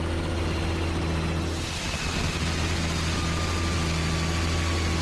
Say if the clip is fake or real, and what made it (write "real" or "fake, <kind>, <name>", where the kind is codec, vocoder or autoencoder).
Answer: real